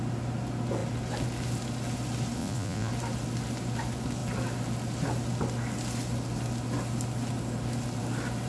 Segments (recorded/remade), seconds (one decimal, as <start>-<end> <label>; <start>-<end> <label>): 0.0-2.4 recorded; 2.4-2.9 remade; 2.9-8.5 recorded